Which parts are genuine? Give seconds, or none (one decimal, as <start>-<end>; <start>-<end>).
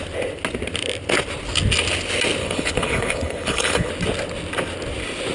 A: 0.0-2.4; 3.9-5.3